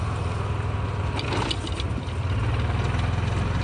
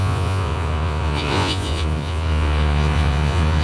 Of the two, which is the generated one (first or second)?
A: second